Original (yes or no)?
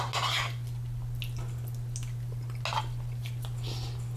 yes